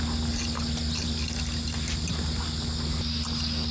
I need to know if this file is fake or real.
real